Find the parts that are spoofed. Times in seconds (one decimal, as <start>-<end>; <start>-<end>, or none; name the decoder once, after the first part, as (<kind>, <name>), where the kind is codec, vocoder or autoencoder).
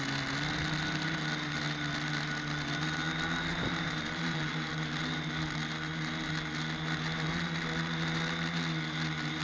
3.5-4.7 (vocoder, BigVGAN v2)